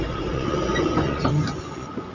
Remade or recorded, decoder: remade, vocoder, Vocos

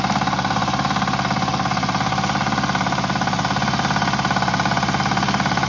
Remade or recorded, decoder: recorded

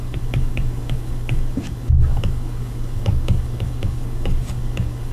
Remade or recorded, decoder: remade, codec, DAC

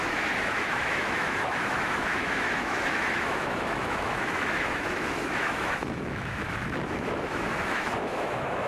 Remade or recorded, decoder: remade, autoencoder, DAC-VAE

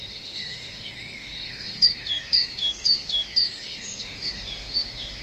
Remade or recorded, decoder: remade, autoencoder, DAC-VAE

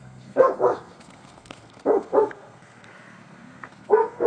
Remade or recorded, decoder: remade, codec, SNAC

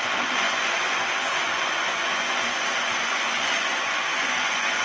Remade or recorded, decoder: remade, vocoder, Vocos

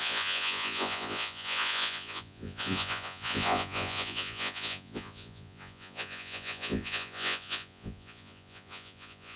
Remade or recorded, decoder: remade, vocoder, Vocos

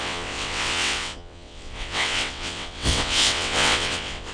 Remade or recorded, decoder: remade, vocoder, WaveNeXt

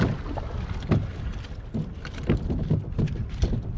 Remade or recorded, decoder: recorded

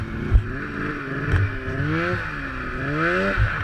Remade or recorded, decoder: recorded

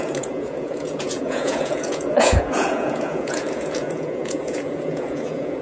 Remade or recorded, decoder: remade, vocoder, Vocos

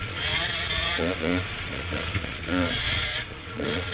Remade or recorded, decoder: remade, vocoder, Vocos